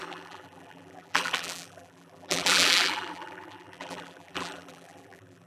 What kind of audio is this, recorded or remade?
remade